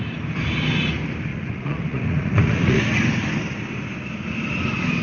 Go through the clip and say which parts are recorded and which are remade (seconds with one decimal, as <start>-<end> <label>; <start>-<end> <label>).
0.0-1.3 recorded; 1.3-2.8 remade; 2.8-5.0 recorded